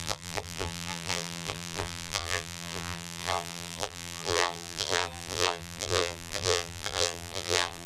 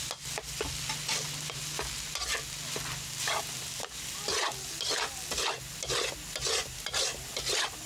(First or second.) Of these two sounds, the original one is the second